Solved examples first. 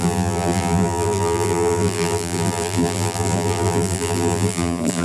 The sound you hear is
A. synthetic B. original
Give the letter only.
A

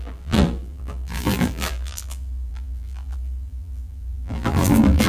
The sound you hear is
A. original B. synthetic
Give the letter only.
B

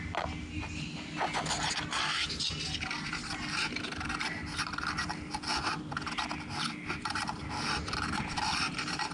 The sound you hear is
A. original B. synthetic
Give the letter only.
A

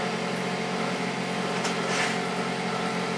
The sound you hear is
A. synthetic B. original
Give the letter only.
B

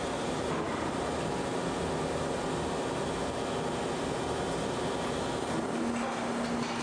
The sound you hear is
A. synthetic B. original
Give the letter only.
B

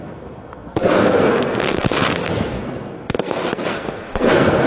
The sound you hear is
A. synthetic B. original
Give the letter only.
A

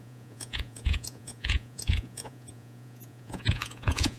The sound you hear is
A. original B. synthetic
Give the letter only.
B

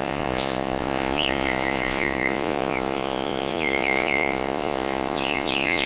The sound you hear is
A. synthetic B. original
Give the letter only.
A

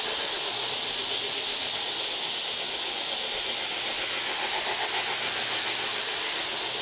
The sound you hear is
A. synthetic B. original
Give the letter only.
B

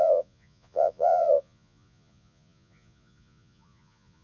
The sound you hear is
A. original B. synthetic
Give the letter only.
B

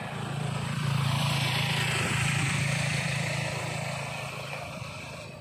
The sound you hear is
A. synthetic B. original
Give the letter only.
A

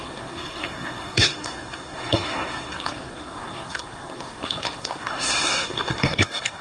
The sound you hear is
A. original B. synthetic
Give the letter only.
B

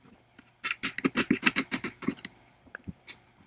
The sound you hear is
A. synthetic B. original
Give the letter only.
B